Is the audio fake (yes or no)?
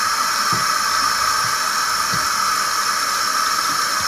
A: no